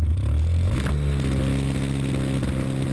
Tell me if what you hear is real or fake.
real